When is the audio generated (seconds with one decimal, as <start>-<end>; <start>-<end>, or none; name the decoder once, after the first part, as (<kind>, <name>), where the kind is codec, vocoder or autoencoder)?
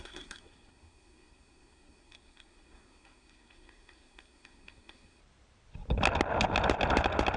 0.0-5.2 (codec, SNAC)